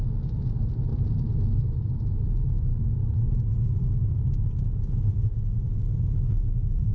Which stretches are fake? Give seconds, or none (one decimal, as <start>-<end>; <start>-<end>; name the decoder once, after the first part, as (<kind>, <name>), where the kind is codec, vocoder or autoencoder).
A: none